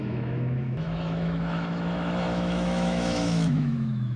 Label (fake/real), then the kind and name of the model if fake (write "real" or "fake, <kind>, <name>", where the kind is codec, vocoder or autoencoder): fake, autoencoder, DAC-VAE